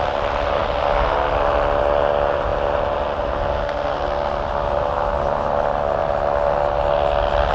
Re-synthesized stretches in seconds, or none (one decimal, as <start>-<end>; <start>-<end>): none